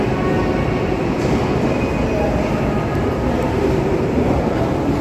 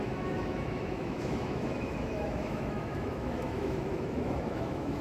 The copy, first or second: second